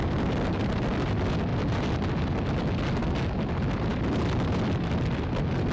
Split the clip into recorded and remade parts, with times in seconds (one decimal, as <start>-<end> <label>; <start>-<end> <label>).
0.0-5.7 recorded